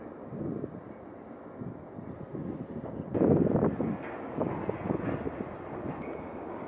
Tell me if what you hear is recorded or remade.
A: recorded